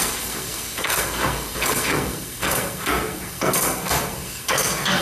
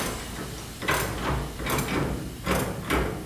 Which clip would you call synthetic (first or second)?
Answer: first